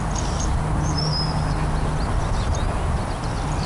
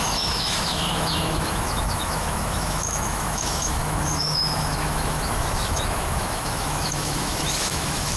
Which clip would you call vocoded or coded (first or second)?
second